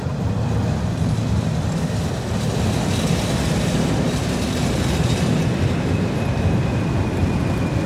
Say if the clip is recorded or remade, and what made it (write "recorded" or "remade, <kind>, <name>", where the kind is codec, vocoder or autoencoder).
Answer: recorded